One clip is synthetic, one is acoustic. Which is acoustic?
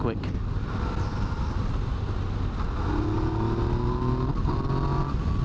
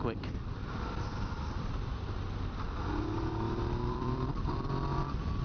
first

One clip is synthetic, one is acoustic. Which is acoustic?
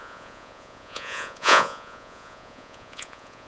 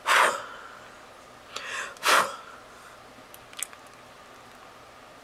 second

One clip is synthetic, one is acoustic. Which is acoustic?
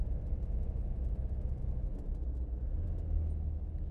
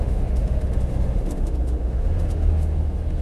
first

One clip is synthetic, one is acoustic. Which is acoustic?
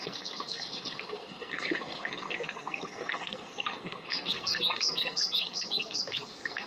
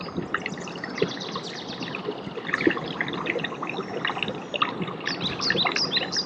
second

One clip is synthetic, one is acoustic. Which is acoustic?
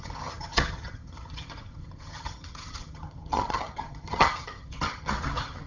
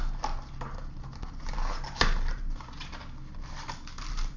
second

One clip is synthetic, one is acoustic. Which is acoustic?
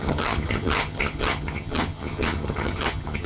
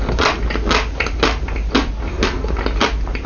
second